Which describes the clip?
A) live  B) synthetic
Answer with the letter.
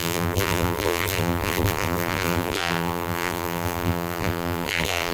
B